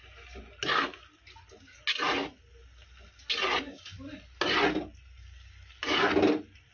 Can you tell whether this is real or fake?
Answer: real